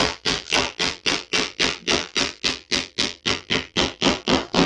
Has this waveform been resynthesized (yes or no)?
yes